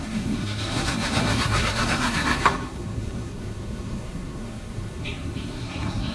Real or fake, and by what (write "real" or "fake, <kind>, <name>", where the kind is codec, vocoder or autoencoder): fake, codec, SNAC